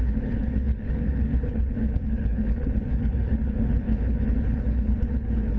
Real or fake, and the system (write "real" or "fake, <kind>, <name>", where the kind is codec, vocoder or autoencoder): fake, codec, HILCodec